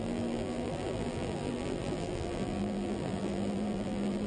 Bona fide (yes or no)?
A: no